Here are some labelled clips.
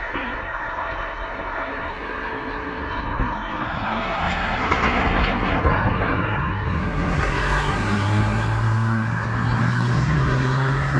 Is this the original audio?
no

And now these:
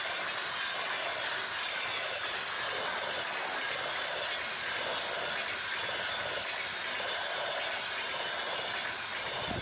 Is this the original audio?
yes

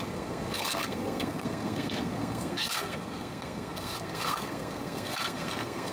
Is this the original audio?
no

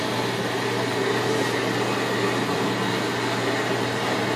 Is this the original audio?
yes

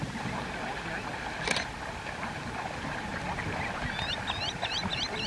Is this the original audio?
yes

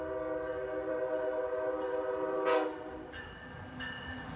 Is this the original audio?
yes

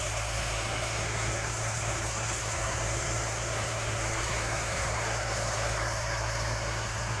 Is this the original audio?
no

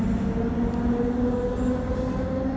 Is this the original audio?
yes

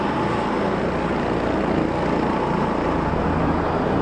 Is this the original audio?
yes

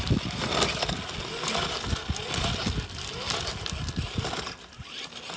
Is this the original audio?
yes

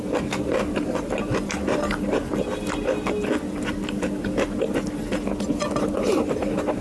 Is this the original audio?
yes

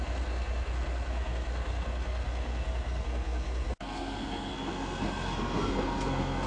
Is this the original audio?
no